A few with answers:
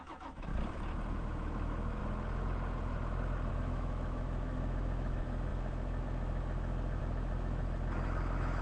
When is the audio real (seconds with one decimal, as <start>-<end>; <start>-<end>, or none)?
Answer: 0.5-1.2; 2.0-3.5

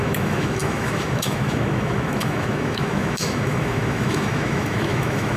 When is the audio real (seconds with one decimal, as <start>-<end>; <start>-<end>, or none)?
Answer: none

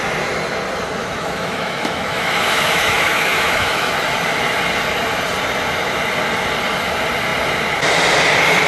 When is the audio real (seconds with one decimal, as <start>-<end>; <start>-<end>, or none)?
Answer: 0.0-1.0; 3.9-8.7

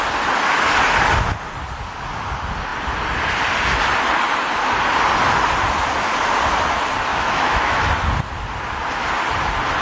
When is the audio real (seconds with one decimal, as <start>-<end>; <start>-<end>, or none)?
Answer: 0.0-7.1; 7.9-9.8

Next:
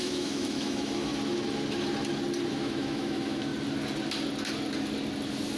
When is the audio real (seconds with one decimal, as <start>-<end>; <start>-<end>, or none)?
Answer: 1.1-2.5; 3.5-5.6

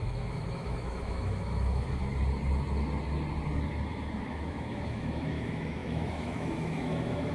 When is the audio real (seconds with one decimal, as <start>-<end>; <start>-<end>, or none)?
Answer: 2.0-4.2